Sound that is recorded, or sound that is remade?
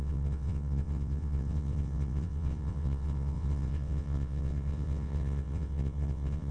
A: remade